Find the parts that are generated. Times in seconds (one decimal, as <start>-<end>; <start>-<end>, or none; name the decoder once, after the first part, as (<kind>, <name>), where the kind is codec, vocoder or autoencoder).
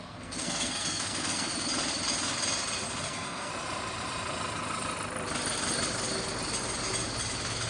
0.0-1.5 (codec, SNAC); 3.0-3.5